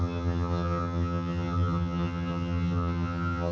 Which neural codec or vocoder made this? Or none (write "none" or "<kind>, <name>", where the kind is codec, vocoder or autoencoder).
vocoder, HiFi-GAN